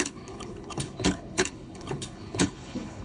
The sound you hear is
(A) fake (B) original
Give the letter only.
A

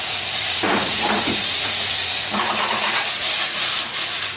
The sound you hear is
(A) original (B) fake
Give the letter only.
B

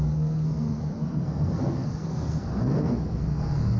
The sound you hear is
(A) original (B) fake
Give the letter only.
B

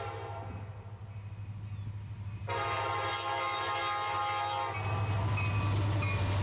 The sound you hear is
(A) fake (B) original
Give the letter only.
B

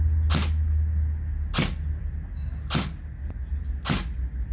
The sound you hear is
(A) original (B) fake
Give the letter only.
A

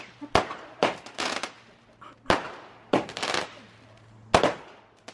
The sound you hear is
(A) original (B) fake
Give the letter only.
A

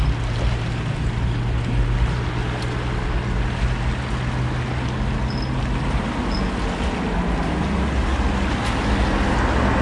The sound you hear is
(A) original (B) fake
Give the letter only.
A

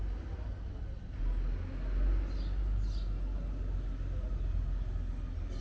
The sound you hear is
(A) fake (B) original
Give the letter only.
B